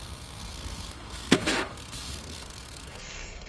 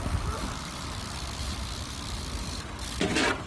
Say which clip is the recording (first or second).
second